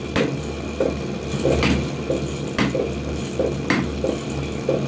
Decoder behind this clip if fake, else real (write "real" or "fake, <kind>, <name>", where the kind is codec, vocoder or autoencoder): real